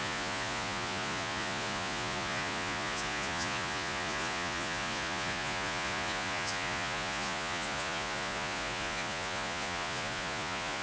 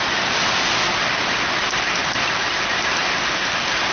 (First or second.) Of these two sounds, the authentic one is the second